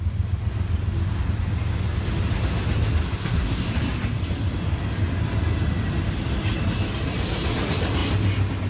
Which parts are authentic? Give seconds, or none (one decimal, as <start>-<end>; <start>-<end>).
0.0-3.0; 3.7-8.7